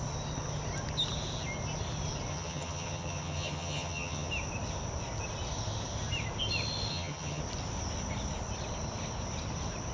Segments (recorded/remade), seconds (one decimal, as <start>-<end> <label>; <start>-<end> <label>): 0.0-2.3 recorded; 2.3-4.3 remade; 4.3-6.9 recorded; 6.9-7.4 remade; 7.4-9.9 recorded